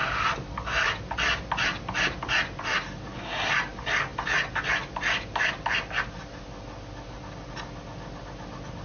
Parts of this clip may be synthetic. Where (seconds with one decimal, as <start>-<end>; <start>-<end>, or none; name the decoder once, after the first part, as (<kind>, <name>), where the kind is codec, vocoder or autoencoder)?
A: 2.7-3.5 (vocoder, BigVGAN v2)